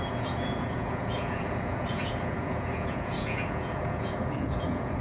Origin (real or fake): fake